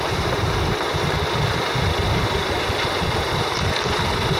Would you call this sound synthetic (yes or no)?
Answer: yes